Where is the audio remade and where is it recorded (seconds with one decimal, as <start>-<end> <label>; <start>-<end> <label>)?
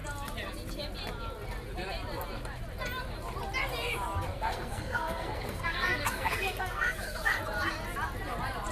0.0-4.3 recorded; 4.3-7.4 remade; 7.4-8.7 recorded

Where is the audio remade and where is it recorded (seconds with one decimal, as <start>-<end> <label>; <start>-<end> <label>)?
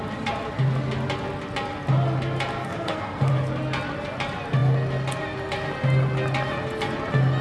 0.0-2.6 recorded; 2.6-3.3 remade; 3.3-7.4 recorded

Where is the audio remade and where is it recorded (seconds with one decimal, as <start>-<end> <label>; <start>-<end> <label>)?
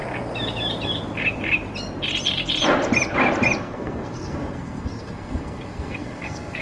0.0-3.6 recorded; 3.6-6.6 remade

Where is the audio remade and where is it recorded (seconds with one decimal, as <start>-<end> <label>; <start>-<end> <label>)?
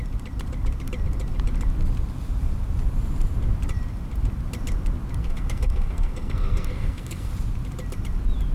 0.0-5.2 recorded; 5.2-7.3 remade; 7.3-8.5 recorded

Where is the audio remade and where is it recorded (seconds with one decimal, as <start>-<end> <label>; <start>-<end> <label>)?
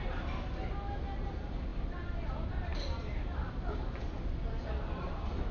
0.0-5.5 recorded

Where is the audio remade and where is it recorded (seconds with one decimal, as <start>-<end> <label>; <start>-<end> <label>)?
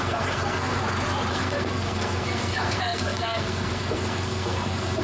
0.0-0.8 remade; 0.8-1.3 recorded; 1.3-5.0 remade